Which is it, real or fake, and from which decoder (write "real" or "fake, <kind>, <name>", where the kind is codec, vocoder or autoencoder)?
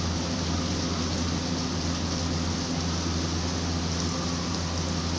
real